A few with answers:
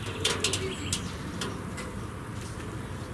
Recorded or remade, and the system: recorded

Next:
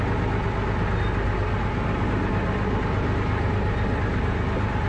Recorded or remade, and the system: recorded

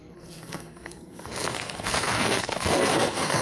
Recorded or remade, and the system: remade, codec, SNAC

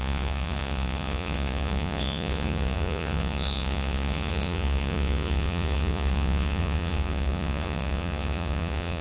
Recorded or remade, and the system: remade, vocoder, Vocos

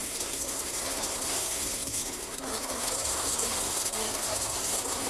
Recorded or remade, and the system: remade, codec, SNAC